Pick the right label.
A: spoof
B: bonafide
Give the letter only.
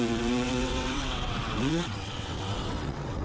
A